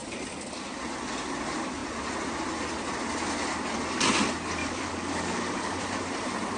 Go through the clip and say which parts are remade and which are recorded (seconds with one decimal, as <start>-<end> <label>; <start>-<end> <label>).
0.0-4.6 recorded; 4.6-5.8 remade; 5.8-6.6 recorded